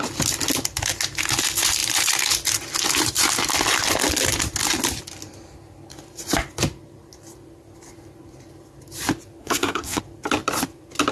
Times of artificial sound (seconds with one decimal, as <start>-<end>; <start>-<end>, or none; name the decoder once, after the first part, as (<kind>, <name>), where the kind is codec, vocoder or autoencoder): 9.4-10.0 (codec, SNAC)